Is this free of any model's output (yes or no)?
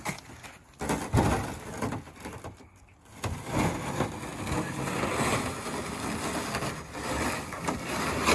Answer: yes